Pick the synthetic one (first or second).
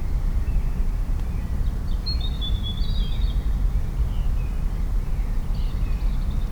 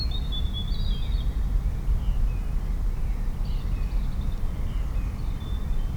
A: first